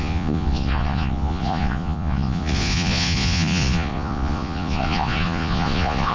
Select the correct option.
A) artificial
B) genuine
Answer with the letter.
A